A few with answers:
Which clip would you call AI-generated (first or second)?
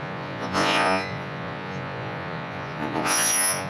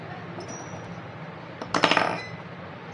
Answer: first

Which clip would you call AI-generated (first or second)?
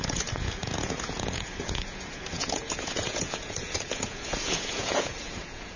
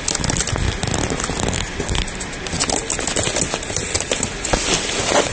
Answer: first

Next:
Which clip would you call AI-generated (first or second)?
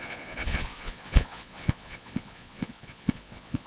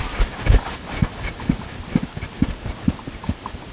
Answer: first